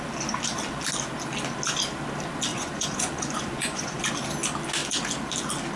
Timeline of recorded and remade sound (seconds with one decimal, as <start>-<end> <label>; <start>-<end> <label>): 0.0-2.5 recorded; 2.5-4.0 remade; 4.0-5.8 recorded